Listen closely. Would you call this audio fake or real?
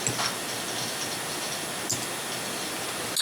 real